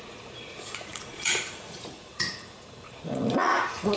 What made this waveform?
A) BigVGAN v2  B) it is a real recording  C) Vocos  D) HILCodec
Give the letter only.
C